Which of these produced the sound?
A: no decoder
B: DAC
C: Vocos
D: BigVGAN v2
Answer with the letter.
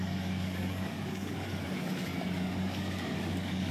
B